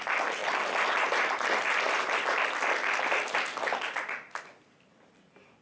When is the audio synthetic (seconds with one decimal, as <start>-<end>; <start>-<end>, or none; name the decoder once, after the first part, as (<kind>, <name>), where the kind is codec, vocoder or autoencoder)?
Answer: none